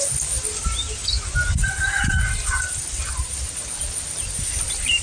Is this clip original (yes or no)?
yes